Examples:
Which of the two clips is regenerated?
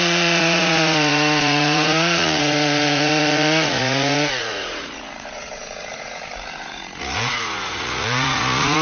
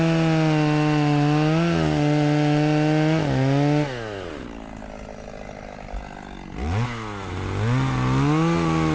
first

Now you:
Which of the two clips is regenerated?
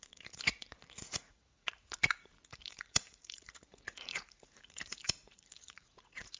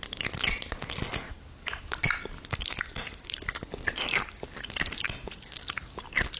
first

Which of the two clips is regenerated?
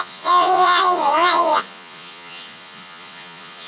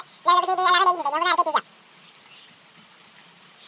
first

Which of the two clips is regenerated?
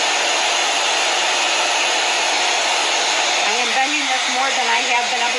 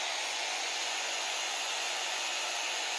second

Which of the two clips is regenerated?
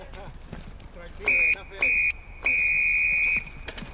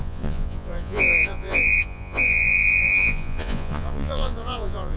second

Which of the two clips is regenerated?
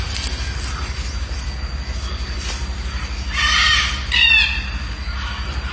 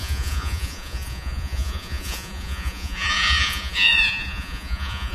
second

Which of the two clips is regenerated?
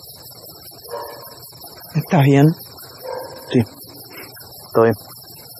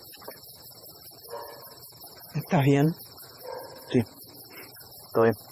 second